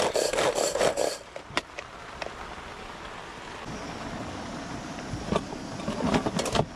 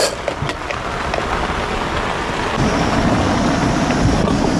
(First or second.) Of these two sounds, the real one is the second